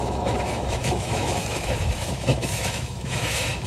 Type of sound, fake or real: fake